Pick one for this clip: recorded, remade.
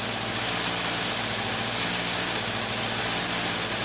recorded